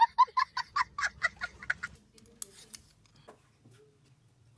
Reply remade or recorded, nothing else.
recorded